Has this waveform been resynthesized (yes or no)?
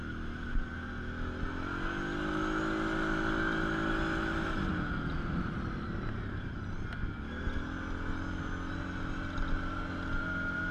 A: no